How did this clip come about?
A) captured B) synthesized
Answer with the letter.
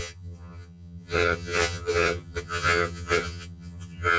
B